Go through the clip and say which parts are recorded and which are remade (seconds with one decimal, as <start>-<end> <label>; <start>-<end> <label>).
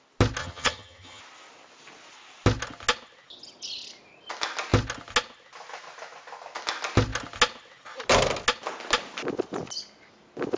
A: 0.0-0.4 recorded; 0.4-1.2 remade; 1.2-10.6 recorded